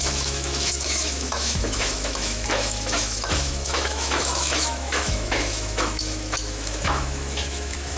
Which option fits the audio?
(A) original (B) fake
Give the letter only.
B